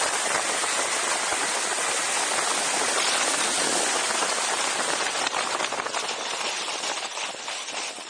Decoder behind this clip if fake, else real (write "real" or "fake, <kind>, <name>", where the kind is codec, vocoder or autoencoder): real